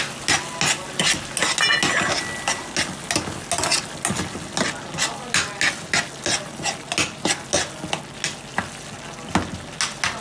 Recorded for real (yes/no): yes